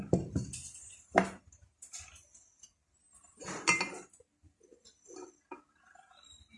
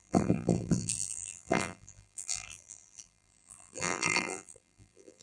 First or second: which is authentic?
first